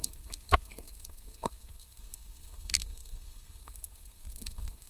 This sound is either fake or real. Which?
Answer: fake